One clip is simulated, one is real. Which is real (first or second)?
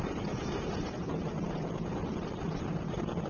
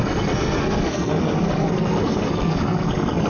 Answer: first